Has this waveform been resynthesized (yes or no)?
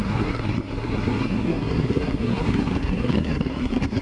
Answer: yes